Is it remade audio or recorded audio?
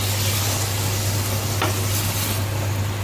recorded